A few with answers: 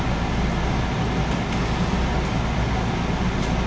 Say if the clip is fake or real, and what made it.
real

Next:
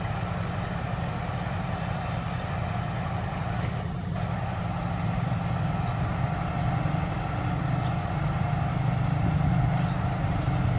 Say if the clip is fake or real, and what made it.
real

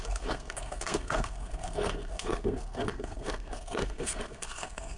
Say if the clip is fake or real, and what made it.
fake, codec, SNAC